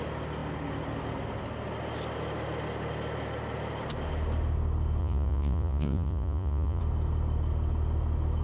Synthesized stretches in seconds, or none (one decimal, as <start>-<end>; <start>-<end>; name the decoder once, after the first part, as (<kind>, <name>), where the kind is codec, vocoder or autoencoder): 5.0-6.8 (vocoder, Vocos)